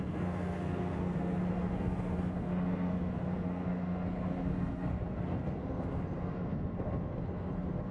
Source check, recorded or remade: remade